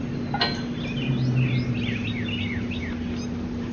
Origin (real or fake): real